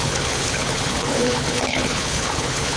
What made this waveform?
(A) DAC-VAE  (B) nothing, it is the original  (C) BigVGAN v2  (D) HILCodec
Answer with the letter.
D